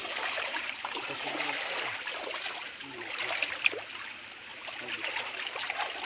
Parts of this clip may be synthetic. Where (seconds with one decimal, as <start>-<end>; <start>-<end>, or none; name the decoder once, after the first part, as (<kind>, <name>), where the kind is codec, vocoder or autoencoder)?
0.0-3.0 (vocoder, BigVGAN v2); 4.5-5.1